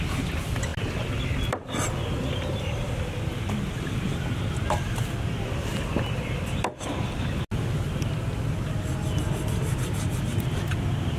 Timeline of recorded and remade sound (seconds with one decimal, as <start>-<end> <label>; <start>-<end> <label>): 0.0-11.2 recorded